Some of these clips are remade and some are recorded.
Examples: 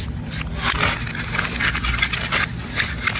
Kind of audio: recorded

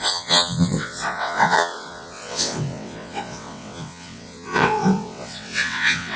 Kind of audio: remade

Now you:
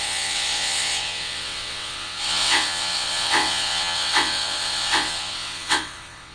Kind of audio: remade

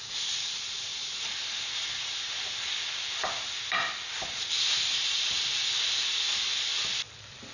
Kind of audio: recorded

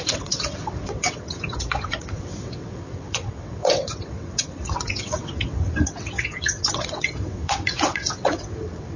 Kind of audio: remade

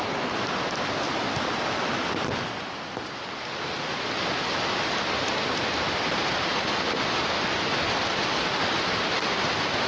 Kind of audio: recorded